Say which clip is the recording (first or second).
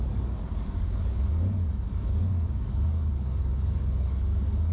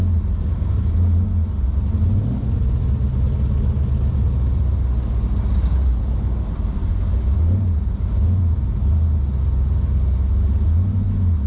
second